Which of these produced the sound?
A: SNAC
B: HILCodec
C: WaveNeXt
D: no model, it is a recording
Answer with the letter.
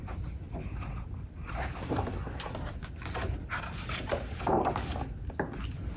D